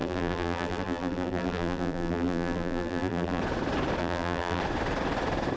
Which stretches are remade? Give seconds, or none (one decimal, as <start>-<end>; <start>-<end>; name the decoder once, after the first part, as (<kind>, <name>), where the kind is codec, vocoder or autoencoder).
0.0-3.4 (vocoder, BigVGAN v2); 4.0-4.6